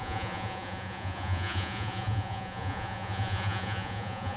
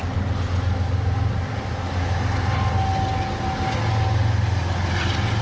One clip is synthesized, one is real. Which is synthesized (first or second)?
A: first